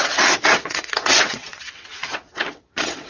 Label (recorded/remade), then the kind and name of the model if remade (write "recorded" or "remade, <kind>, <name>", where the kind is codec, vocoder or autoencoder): remade, vocoder, WaveNeXt